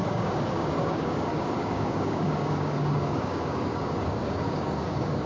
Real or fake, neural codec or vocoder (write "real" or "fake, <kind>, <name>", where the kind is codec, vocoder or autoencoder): fake, codec, DAC